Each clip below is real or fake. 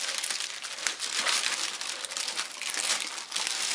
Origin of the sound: real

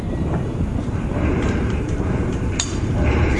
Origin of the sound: fake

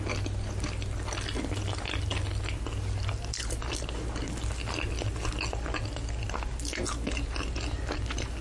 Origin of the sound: real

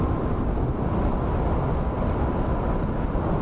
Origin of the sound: real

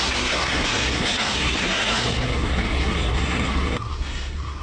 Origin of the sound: fake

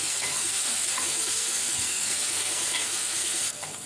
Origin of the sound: fake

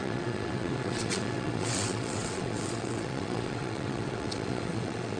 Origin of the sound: fake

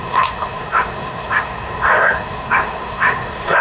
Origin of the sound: fake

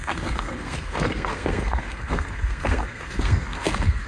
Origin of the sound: fake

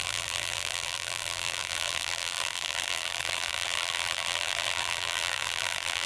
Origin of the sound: fake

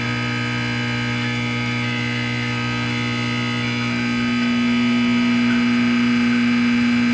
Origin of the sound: fake